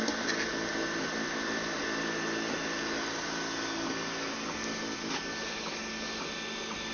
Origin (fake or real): real